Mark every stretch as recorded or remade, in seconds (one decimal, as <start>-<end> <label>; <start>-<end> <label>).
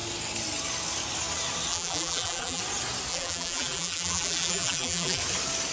0.0-1.7 recorded; 1.7-2.6 remade; 2.6-3.1 recorded; 3.1-5.2 remade; 5.2-5.7 recorded